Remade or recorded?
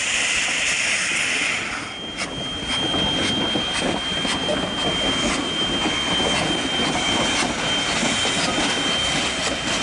recorded